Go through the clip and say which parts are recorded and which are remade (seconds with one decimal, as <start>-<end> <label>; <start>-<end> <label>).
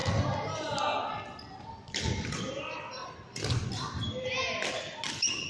0.0-2.3 recorded; 2.3-3.0 remade; 3.0-5.1 recorded; 5.1-5.5 remade